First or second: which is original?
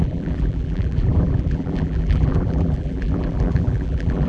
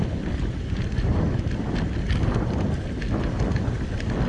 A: second